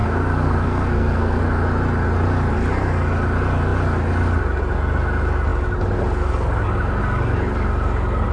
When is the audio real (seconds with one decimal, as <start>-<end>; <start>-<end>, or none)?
1.4-8.3